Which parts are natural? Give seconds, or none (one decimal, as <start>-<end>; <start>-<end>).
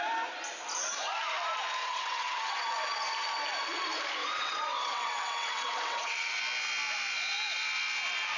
0.0-1.8; 2.6-4.2; 6.4-8.4